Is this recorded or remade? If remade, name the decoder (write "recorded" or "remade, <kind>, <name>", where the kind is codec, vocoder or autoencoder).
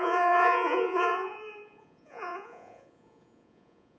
remade, vocoder, Vocos